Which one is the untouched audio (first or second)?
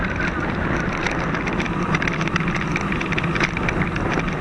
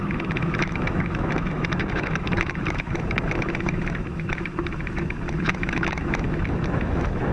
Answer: first